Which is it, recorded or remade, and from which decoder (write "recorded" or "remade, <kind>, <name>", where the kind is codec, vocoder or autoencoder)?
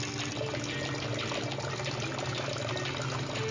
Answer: recorded